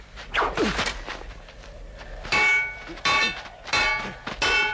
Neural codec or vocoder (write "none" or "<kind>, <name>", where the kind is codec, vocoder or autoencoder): none